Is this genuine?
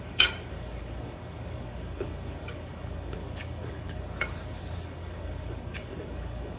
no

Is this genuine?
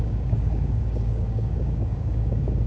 no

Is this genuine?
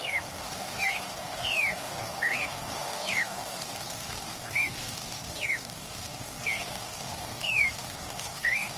no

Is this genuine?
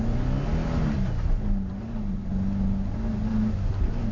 yes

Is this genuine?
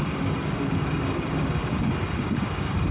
no